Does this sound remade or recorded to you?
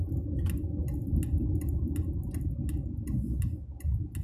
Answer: recorded